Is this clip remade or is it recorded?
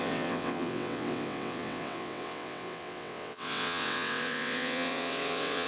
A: remade